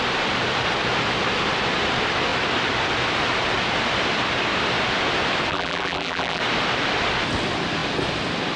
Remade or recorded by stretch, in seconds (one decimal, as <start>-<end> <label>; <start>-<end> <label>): 0.0-5.5 recorded; 5.5-6.4 remade; 6.4-8.6 recorded